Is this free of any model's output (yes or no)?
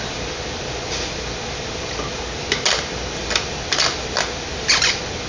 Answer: yes